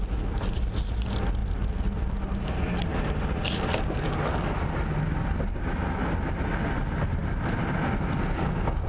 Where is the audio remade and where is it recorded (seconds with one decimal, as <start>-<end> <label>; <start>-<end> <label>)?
0.0-8.9 recorded